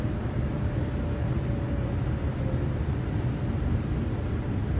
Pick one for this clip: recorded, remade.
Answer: recorded